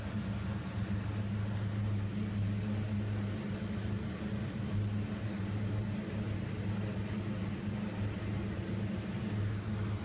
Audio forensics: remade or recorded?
recorded